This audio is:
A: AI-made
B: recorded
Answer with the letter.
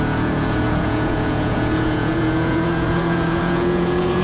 A